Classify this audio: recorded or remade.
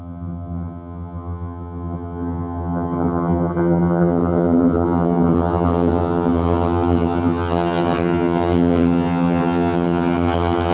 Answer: remade